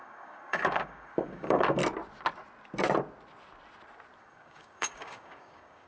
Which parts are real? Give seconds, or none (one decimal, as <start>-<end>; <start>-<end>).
1.8-4.2